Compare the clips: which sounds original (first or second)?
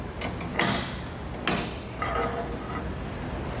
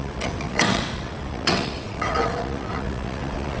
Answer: first